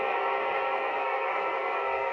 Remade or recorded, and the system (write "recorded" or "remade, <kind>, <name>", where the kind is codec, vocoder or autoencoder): remade, codec, SNAC